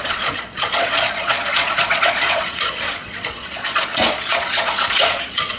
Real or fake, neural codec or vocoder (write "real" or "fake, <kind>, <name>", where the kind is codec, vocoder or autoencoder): fake, vocoder, Vocos